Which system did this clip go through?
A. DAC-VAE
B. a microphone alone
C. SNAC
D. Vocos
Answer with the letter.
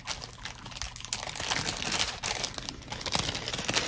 B